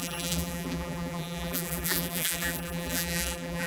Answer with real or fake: fake